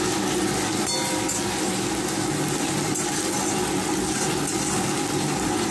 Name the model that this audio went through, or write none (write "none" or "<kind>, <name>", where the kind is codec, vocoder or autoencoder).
none